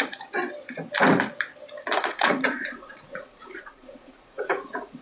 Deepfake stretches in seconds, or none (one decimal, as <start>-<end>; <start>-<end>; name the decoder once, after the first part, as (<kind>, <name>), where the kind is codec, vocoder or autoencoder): 2.0-5.0 (vocoder, Vocos)